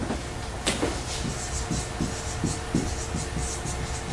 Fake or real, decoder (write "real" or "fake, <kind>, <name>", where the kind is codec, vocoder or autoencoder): real